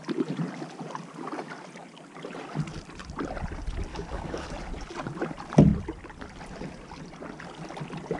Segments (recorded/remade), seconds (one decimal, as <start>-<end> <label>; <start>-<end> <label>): 0.0-3.9 recorded; 3.9-4.5 remade; 4.5-8.2 recorded